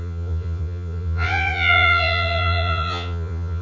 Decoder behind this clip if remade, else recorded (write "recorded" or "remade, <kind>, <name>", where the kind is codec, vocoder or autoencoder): remade, vocoder, Vocos